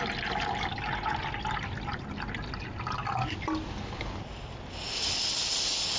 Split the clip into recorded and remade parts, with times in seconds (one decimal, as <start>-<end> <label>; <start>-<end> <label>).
0.0-6.0 recorded